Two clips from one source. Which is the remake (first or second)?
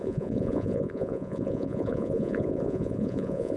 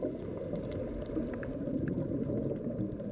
first